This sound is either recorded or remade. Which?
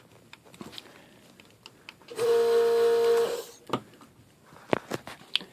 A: recorded